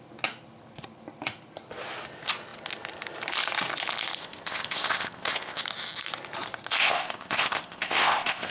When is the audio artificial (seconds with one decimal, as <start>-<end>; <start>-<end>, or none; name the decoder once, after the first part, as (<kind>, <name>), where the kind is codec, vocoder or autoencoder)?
4.2-5.6 (codec, ZipCodec); 6.8-8.5